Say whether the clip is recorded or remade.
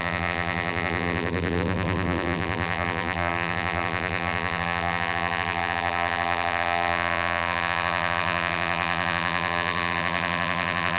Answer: remade